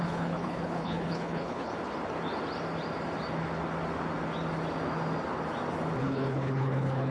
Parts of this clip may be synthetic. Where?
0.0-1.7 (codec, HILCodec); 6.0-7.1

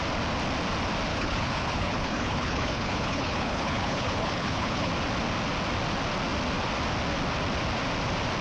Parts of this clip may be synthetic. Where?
1.1-4.9 (codec, HILCodec)